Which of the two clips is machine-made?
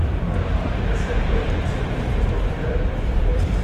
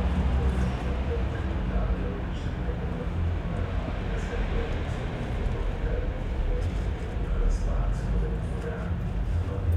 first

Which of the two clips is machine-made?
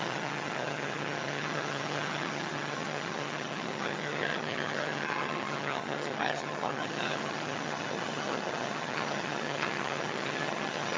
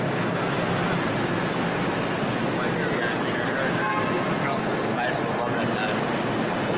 first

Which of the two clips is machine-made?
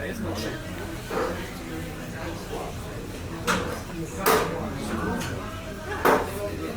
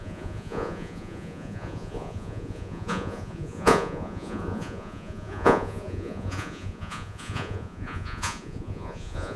second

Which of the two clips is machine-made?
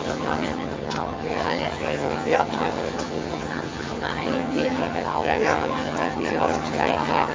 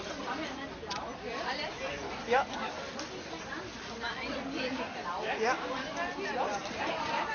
first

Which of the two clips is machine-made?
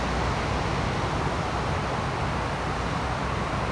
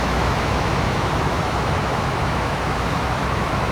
second